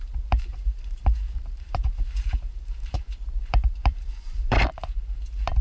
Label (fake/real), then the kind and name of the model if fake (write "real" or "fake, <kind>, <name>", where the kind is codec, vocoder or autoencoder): fake, vocoder, BigVGAN v2